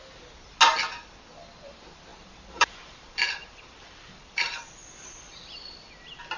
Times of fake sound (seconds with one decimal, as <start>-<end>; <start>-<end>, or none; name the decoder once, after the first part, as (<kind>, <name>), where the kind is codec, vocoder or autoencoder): 2.1-5.9 (vocoder, BigVGAN v2)